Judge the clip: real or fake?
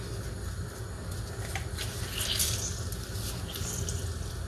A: real